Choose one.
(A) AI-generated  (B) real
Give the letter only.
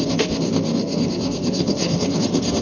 A